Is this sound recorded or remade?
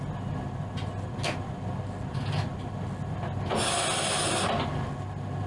recorded